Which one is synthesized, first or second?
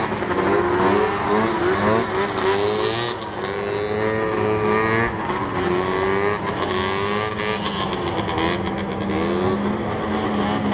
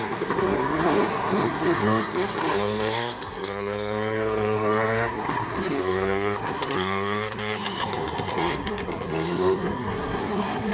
second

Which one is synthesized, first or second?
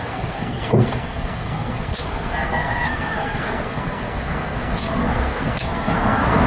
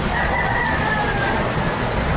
first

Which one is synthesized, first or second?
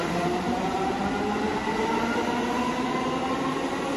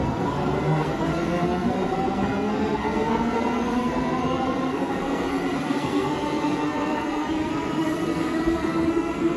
second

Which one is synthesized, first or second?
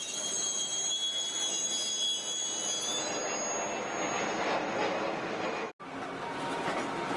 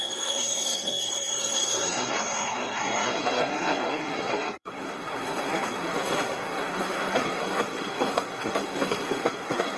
second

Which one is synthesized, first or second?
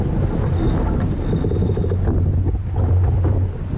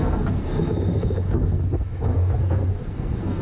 second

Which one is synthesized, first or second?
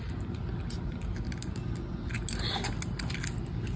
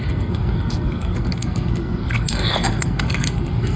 second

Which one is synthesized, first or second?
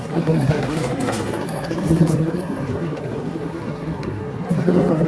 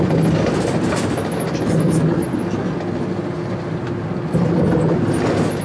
first